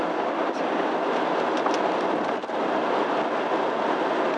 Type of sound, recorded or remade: recorded